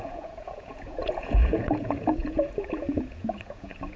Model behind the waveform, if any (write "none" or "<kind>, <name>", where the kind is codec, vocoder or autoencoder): vocoder, Vocos